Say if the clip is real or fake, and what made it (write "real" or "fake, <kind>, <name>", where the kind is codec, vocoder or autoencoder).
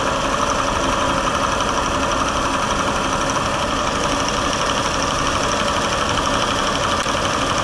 real